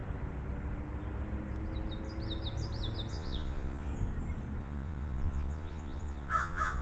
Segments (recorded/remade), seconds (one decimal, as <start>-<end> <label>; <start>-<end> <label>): 0.0-3.1 recorded; 3.1-3.9 remade; 3.9-4.6 recorded; 4.6-6.8 remade